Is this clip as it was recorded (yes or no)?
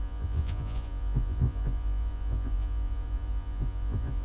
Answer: no